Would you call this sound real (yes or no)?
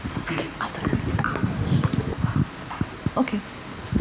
yes